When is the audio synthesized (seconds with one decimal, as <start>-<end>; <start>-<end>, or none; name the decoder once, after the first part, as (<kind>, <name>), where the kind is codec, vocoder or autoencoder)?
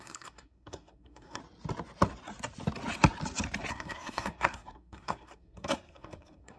0.0-1.4 (codec, SNAC); 3.7-6.6